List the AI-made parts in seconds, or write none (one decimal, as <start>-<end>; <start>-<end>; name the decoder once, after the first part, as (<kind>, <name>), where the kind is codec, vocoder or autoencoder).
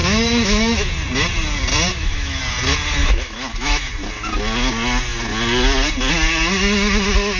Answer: 0.0-0.9 (autoencoder, DAC-VAE); 1.9-2.4; 3.0-3.9